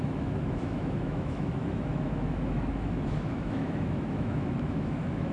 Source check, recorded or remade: remade